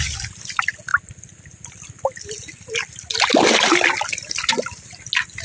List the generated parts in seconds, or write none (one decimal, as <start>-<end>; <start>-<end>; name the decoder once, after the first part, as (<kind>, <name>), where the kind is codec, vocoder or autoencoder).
none